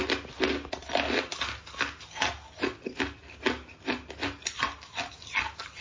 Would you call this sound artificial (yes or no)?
no